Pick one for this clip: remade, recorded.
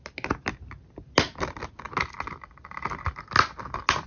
recorded